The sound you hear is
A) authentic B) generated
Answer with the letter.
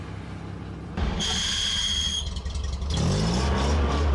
A